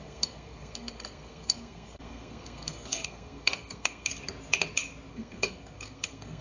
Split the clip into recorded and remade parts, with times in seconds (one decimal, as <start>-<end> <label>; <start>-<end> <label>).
0.0-4.1 remade; 4.1-5.1 recorded; 5.1-6.4 remade